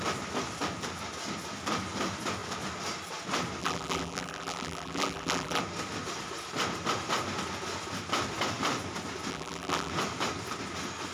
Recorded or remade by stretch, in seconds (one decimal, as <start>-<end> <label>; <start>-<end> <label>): 0.0-3.6 recorded; 3.6-5.6 remade; 5.6-9.3 recorded; 9.3-9.9 remade; 9.9-11.1 recorded